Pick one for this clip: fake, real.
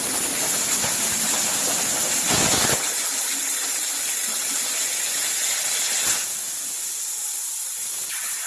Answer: real